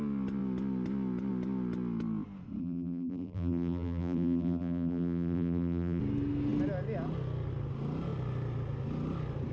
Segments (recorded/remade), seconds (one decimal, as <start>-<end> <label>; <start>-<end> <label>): 0.0-2.6 recorded; 2.6-6.0 remade; 6.0-9.5 recorded